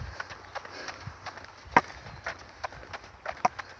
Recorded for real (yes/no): yes